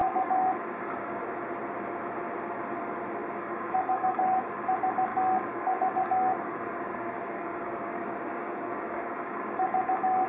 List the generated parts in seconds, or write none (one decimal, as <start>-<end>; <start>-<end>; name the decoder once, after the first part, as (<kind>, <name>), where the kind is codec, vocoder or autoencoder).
0.0-1.2 (codec, DAC); 3.2-4.4; 5.1-10.3